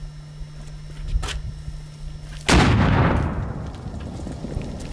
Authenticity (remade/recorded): recorded